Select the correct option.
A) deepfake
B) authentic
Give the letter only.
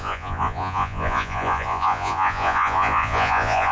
A